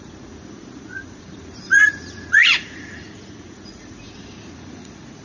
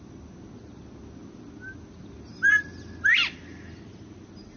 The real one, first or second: second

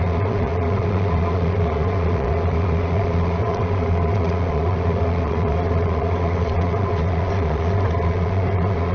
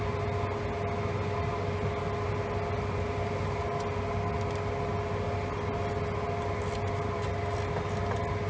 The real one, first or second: second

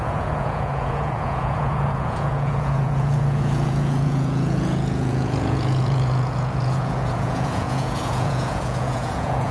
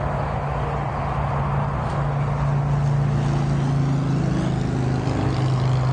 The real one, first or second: second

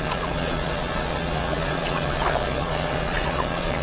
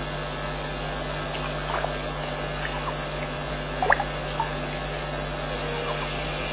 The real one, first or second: second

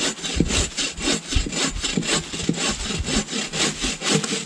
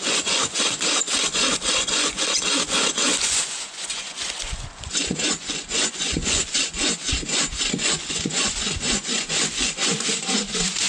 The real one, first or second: first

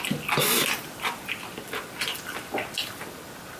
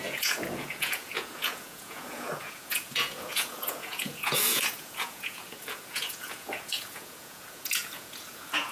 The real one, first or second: first